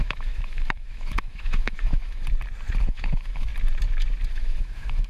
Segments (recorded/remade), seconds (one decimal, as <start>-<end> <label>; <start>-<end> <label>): 0.0-2.2 remade; 2.2-2.9 recorded; 2.9-3.5 remade; 3.5-4.3 recorded; 4.3-5.1 remade